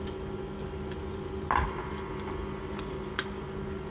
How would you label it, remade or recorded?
recorded